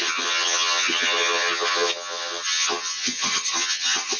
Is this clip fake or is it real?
fake